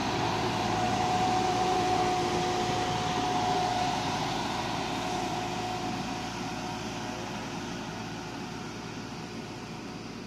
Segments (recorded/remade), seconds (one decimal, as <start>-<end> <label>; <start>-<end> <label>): 0.0-2.0 remade; 2.0-3.7 recorded; 3.7-4.2 remade; 4.2-10.3 recorded